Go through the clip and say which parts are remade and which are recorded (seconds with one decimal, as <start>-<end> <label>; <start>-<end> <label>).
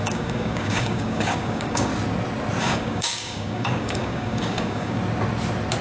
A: 0.0-1.9 remade; 1.9-2.6 recorded; 2.6-5.0 remade; 5.0-5.8 recorded